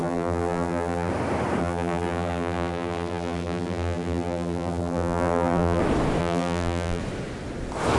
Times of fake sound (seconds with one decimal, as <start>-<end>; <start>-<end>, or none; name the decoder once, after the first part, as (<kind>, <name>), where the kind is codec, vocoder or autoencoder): 0.0-1.1 (vocoder, BigVGAN v2); 1.6-5.8; 6.2-7.0